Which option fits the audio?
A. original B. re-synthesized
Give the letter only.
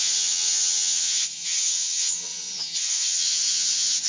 B